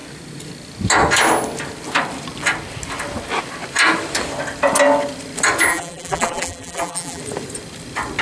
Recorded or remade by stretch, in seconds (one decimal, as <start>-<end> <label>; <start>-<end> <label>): 0.0-5.7 recorded; 5.7-7.2 remade; 7.2-8.2 recorded